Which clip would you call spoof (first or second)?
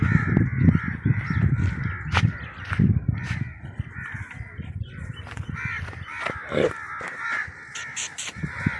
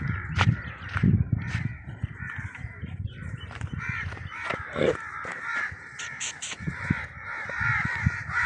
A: second